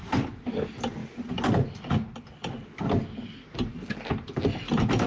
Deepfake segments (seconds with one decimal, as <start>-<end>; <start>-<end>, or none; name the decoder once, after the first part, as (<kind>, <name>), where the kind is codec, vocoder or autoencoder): none